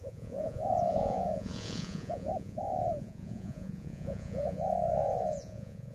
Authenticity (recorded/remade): remade